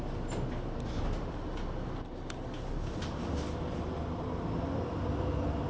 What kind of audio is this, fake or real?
real